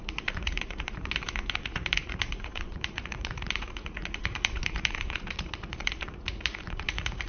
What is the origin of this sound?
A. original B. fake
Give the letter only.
B